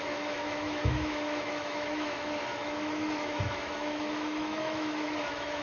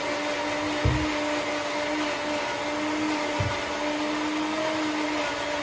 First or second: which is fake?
first